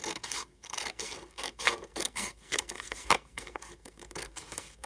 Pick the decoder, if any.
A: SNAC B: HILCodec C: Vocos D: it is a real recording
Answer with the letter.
A